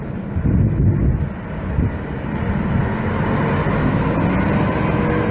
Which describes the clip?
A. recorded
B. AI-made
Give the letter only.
A